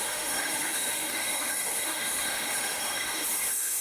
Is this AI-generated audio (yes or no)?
yes